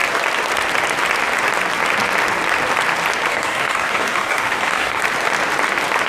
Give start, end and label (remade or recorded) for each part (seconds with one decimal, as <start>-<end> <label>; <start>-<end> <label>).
0.0-3.3 recorded; 3.3-5.0 remade; 5.0-6.1 recorded